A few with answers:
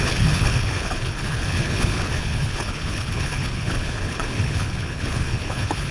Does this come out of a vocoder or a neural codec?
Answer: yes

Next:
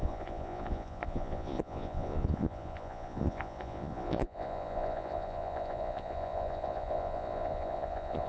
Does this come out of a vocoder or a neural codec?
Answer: yes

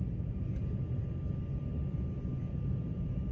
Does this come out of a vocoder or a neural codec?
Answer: no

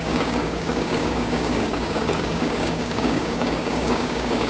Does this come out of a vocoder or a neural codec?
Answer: yes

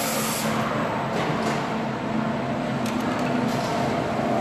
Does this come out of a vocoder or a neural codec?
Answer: no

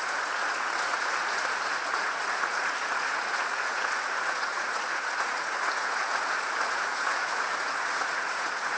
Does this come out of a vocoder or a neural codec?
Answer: yes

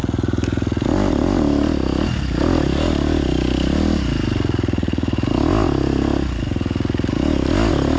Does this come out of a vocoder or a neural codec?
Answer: no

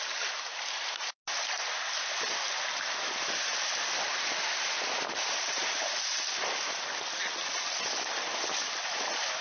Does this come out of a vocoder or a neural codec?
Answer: no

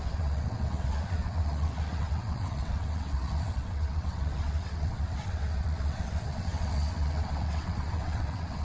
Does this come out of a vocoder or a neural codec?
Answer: yes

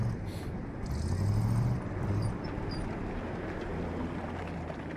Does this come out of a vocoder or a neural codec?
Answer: no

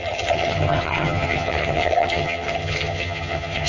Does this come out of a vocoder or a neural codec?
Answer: yes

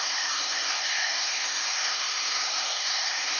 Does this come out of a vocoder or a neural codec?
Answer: yes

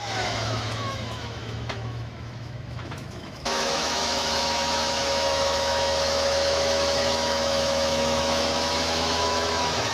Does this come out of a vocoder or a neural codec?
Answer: yes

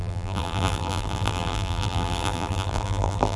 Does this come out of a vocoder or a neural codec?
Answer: yes